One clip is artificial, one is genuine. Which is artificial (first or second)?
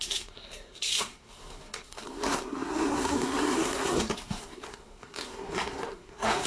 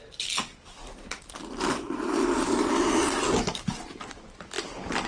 first